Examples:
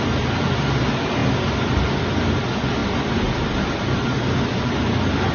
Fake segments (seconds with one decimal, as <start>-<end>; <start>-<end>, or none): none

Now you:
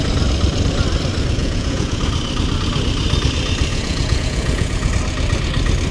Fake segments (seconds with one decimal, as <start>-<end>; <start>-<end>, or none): 1.4-2.0; 3.7-4.9

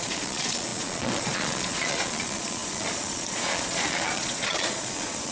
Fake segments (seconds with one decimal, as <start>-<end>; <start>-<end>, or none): 0.0-5.3

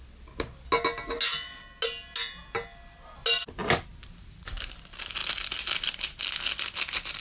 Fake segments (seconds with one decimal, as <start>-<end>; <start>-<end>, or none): none